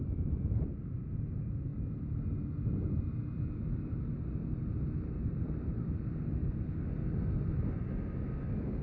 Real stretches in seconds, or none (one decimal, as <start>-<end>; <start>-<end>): 1.7-5.1; 6.4-8.8